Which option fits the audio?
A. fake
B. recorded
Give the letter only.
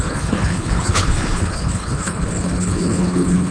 A